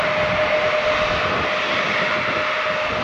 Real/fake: real